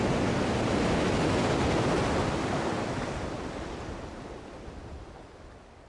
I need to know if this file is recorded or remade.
recorded